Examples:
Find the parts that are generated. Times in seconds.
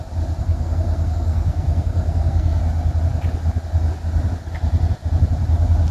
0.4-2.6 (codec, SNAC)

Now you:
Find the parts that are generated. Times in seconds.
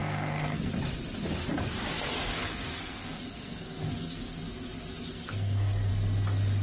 0.0-0.7 (codec, SNAC); 2.4-4.4; 5.1-5.9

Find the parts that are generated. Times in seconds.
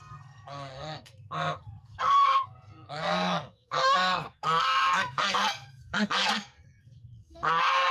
0.0-7.9 (codec, SNAC)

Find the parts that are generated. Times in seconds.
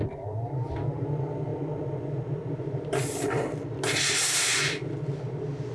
none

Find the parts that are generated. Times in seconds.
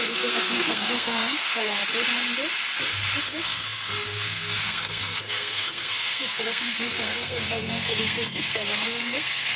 0.0-1.8 (codec, SNAC); 3.2-9.6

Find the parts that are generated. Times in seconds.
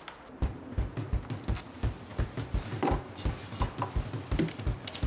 none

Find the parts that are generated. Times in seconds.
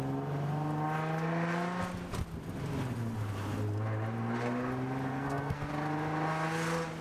5.1-5.7 (codec, SNAC)